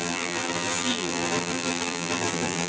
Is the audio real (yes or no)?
no